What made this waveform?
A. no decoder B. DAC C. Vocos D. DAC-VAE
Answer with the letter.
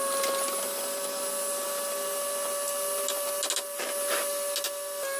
A